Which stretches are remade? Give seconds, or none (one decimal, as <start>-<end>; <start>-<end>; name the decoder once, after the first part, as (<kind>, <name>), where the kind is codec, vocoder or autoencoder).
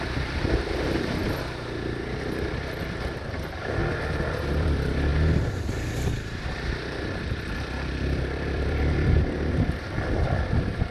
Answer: 0.0-3.8 (vocoder, BigVGAN v2); 4.5-5.1; 6.1-10.9